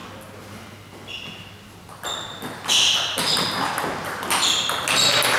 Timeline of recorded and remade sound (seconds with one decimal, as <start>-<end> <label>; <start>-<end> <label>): 0.0-5.4 recorded